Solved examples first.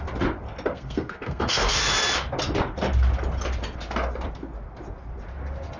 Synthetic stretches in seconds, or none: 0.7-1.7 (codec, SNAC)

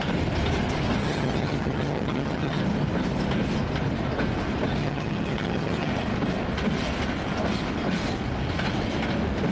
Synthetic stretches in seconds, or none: 1.0-2.6 (vocoder, HiFi-GAN); 4.8-5.9

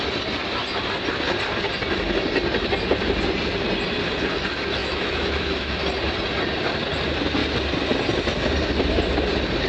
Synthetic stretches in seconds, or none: 4.8-5.8 (autoencoder, DAC-VAE)

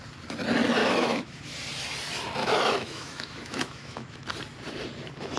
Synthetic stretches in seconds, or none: 0.8-1.4 (autoencoder, DAC-VAE); 2.4-4.2

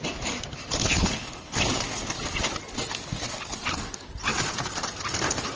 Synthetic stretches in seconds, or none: 0.8-1.5 (codec, HILCodec)

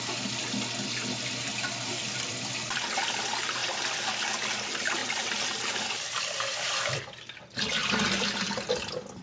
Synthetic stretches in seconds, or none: 1.9-3.2 (vocoder, BigVGAN v2); 5.0-7.0; 7.8-8.5

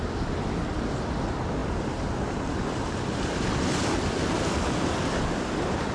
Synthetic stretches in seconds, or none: none

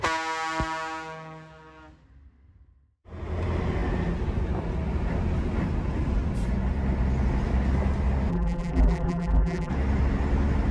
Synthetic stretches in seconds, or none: 8.3-9.7 (vocoder, BigVGAN v2)